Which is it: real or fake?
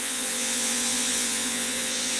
fake